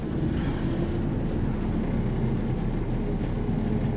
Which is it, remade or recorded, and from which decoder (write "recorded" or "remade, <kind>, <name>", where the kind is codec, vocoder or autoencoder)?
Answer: recorded